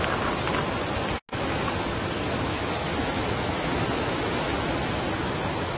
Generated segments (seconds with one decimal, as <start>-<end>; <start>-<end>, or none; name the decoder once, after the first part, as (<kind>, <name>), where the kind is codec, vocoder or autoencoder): 2.5-4.5 (autoencoder, DAC-VAE)